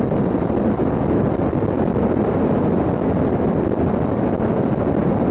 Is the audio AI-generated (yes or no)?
no